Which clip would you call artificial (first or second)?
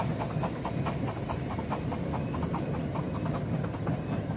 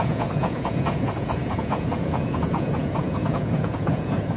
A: second